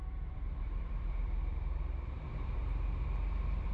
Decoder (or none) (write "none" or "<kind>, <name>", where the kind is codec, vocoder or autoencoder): vocoder, BigVGAN v2